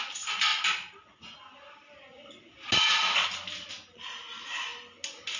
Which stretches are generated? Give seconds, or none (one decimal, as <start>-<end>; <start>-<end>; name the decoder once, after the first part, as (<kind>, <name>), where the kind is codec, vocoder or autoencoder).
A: none